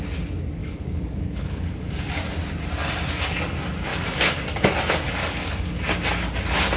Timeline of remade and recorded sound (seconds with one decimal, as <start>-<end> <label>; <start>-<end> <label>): 0.0-0.6 recorded; 0.6-2.1 remade; 2.1-3.9 recorded; 3.9-4.6 remade; 4.6-5.2 recorded; 5.2-6.1 remade; 6.1-6.8 recorded